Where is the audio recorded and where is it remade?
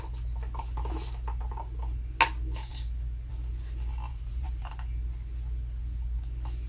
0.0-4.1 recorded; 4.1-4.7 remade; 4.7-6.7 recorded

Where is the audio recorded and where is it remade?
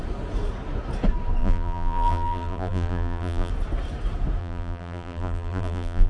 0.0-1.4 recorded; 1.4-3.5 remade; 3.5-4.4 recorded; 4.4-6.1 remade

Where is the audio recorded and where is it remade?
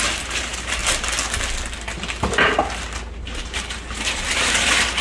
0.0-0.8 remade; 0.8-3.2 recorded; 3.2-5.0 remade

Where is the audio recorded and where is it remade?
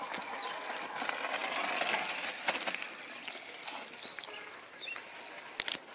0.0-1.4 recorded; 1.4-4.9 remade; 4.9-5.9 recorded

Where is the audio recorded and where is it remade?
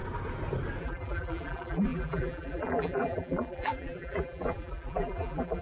0.0-0.8 recorded; 0.8-5.6 remade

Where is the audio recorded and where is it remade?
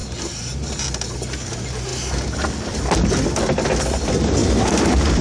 0.0-0.7 remade; 0.7-4.4 recorded; 4.4-5.2 remade